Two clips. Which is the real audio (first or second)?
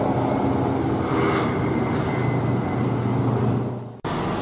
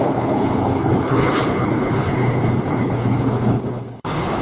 first